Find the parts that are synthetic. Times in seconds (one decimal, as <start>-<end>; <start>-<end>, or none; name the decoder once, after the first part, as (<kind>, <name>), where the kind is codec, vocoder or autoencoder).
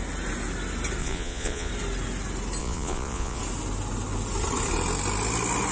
1.0-1.7 (vocoder, Vocos); 2.6-3.4